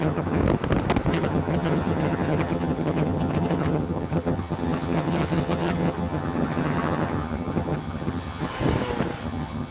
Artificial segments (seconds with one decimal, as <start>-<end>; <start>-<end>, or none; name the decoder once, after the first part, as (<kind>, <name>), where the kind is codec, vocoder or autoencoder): 0.0-0.4 (vocoder, HiFi-GAN); 1.1-8.5; 9.2-9.7